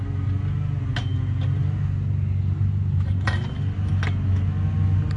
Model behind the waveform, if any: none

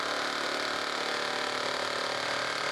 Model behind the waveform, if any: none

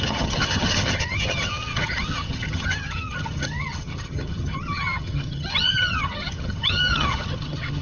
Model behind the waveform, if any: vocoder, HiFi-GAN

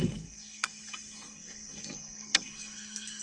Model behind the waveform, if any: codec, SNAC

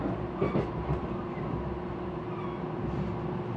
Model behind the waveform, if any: none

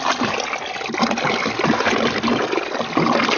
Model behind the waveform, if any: none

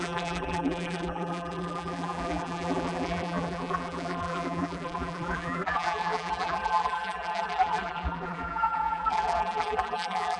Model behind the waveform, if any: vocoder, BigVGAN v2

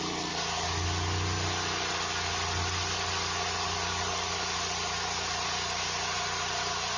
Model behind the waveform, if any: none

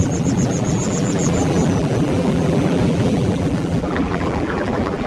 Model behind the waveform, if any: vocoder, BigVGAN v2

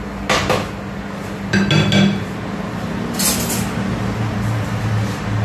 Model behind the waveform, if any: none